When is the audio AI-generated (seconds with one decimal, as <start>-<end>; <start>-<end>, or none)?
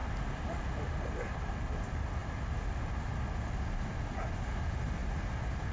none